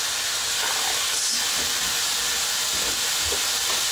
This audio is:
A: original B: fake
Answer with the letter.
A